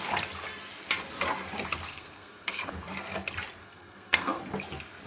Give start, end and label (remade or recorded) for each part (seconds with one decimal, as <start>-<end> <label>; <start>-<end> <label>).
0.0-1.9 recorded; 1.9-2.7 remade; 2.7-3.6 recorded; 3.6-4.4 remade; 4.4-5.1 recorded